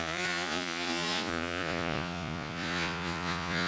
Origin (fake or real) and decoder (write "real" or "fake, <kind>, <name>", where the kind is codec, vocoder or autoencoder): fake, vocoder, Vocos